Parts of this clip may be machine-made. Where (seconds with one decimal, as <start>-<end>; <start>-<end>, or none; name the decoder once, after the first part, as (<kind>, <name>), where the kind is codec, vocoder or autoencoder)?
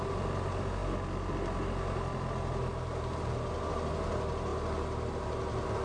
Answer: none